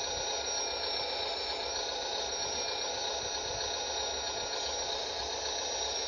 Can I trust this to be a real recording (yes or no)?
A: yes